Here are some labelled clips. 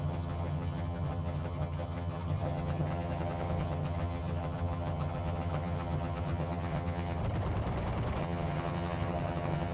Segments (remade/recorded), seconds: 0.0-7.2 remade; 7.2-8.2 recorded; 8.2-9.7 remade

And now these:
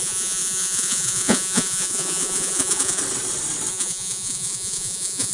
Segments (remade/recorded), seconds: 0.0-3.0 remade; 3.0-3.7 recorded; 3.7-5.3 remade

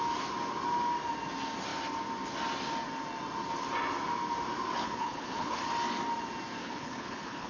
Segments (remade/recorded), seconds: 0.0-4.8 recorded; 4.8-5.6 remade; 5.6-6.6 recorded; 6.6-7.5 remade

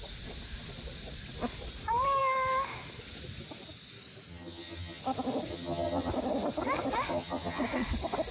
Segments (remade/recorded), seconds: 0.0-4.3 recorded; 4.3-5.0 remade; 5.0-5.5 recorded; 5.5-6.1 remade; 6.1-7.1 recorded; 7.1-7.6 remade; 7.6-8.3 recorded

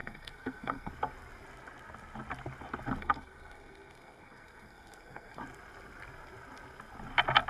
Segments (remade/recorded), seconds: 0.0-0.9 remade; 0.9-3.0 recorded; 3.0-5.4 remade; 5.4-7.5 recorded

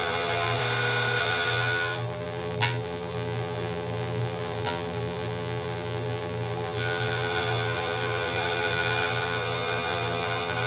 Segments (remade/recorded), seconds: 0.0-0.6 remade; 0.6-1.2 recorded; 1.2-10.7 remade